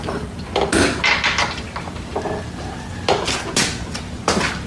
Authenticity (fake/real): real